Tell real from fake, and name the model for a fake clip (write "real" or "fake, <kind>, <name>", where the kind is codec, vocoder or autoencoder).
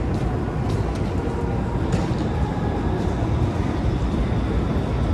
real